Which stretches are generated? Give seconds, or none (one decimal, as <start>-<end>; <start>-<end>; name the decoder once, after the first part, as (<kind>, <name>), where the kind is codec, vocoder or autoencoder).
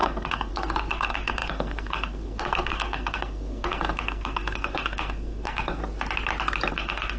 0.0-5.8 (codec, SNAC); 6.7-7.2